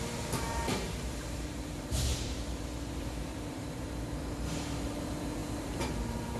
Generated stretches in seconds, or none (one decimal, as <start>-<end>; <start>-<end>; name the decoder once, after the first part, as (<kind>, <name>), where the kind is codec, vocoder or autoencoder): 0.0-6.4 (vocoder, BigVGAN v2)